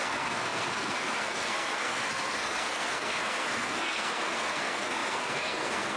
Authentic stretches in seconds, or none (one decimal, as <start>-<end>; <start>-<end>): none